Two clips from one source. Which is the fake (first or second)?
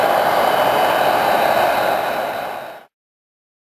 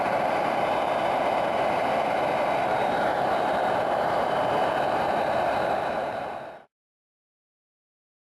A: second